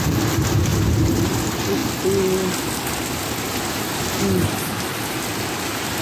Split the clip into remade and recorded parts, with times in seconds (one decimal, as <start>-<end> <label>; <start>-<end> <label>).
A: 0.0-0.7 recorded; 0.7-1.4 remade; 1.4-5.3 recorded; 5.3-6.0 remade

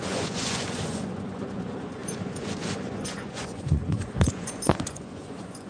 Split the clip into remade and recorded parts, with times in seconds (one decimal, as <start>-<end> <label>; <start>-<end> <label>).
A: 0.0-5.7 remade